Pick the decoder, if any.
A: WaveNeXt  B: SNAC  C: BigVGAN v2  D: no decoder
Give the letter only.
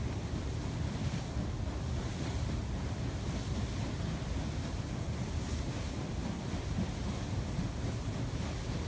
D